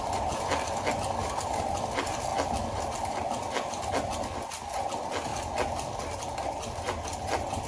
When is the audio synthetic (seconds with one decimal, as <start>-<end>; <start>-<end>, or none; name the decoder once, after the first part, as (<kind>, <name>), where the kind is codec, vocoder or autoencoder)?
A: none